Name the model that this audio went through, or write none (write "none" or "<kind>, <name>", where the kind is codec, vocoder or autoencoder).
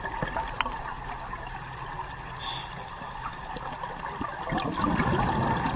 none